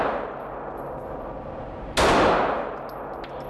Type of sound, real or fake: real